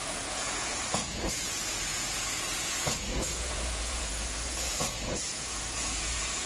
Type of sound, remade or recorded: remade